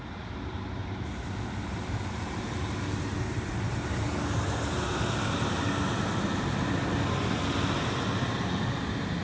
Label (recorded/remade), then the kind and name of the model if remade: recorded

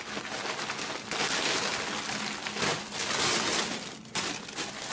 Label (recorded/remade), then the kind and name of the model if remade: recorded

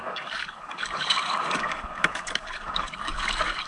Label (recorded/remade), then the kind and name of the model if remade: remade, codec, DAC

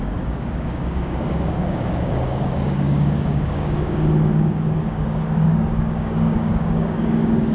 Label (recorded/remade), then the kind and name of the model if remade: remade, codec, DAC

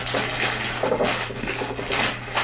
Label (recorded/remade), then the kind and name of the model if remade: recorded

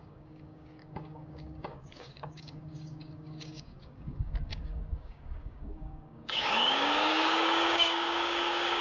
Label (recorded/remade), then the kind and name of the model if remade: remade, codec, DAC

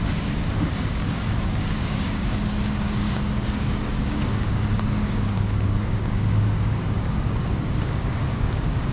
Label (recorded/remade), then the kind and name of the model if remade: remade, codec, DAC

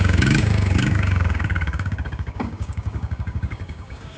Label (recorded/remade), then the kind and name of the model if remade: remade, codec, DAC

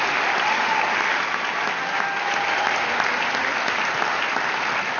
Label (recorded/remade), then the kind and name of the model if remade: recorded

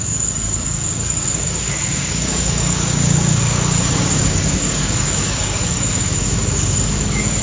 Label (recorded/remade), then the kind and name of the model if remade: remade, codec, DAC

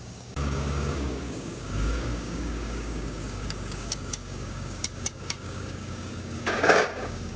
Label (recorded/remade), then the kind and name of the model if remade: remade, codec, DAC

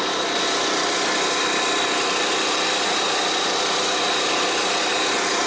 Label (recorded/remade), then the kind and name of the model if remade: recorded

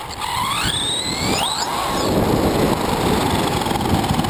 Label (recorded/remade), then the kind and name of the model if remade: recorded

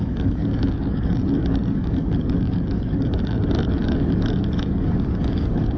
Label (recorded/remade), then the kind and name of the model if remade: remade, codec, DAC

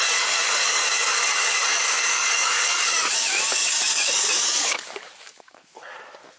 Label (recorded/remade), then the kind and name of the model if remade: remade, codec, DAC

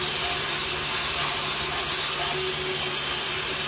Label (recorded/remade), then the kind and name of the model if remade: recorded